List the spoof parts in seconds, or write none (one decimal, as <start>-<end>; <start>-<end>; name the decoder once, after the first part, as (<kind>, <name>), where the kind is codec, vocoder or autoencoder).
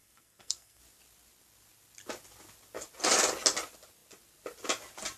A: 0.0-0.8 (codec, SNAC)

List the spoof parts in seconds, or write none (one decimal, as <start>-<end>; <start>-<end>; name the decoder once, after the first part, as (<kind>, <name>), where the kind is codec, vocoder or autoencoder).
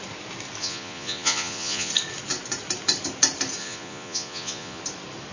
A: 0.6-1.9 (vocoder, Vocos); 3.6-4.8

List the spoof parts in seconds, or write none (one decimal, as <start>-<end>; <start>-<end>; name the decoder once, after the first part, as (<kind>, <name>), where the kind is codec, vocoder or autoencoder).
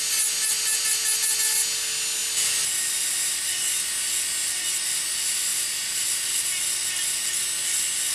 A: 5.5-6.6 (vocoder, BigVGAN v2)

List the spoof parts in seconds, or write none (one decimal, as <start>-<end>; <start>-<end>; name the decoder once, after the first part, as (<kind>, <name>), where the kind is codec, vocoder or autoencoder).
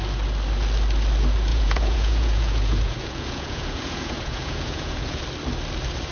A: 1.5-5.2 (vocoder, Vocos)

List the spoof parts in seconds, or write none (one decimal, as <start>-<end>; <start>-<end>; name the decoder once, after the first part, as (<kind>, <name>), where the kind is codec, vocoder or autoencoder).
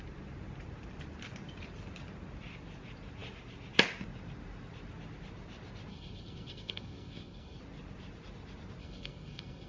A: 5.9-7.6 (codec, SNAC); 8.8-9.7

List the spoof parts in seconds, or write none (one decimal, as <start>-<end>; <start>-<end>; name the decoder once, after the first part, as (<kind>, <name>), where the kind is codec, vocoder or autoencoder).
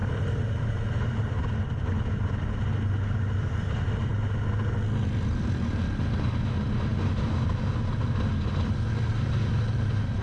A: none